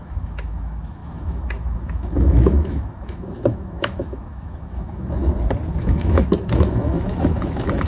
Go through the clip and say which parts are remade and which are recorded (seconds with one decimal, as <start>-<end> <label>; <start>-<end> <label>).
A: 0.0-5.2 remade; 5.2-5.8 recorded; 5.8-7.9 remade